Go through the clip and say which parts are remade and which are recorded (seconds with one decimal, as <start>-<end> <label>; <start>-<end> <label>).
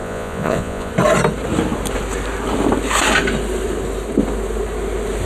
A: 0.0-0.9 remade; 0.9-5.3 recorded